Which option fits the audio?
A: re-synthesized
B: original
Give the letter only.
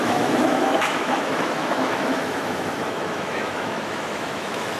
A